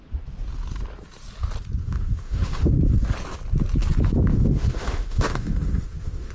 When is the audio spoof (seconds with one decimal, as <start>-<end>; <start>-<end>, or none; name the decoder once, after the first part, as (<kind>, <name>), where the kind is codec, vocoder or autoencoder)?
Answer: 1.8-2.8 (autoencoder, DAC-VAE); 4.3-6.3